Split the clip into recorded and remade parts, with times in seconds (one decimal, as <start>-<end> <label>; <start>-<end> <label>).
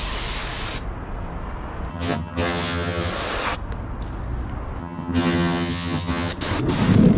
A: 0.0-1.9 recorded; 1.9-3.1 remade; 3.1-4.8 recorded; 4.8-6.3 remade; 6.3-7.2 recorded